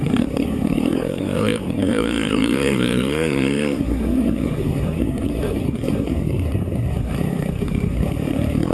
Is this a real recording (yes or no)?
no